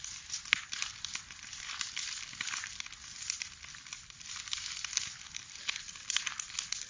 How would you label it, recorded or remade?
recorded